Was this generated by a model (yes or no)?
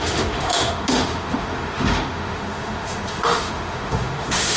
yes